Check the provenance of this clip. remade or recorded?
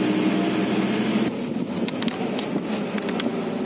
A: recorded